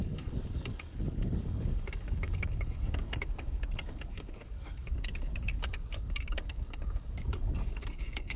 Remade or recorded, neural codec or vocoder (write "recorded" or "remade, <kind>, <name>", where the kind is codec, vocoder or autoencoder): remade, codec, DAC